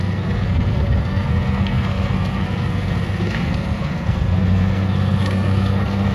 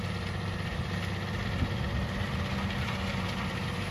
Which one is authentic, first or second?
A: second